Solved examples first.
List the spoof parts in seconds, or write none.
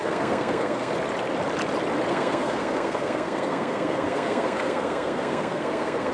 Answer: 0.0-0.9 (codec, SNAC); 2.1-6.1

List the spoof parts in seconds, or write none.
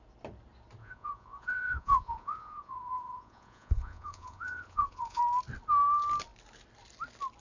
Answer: 0.8-5.2 (vocoder, Vocos)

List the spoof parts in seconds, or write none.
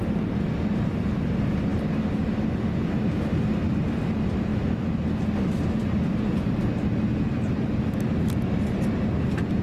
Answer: none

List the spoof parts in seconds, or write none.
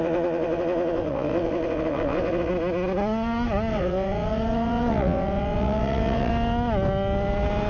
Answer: 0.0-2.5 (vocoder, WaveNeXt); 3.7-6.3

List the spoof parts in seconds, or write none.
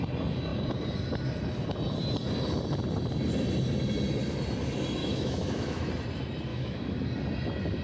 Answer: 5.0-5.9 (autoencoder, DAC-VAE); 6.5-7.0